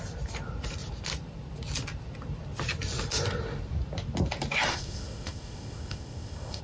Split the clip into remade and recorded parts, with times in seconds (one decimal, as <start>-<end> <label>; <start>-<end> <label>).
0.0-4.7 recorded; 4.7-6.6 remade